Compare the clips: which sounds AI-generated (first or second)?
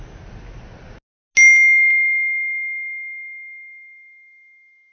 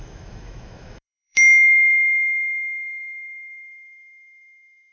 second